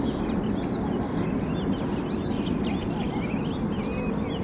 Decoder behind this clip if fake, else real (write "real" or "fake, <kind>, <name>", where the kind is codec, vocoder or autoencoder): real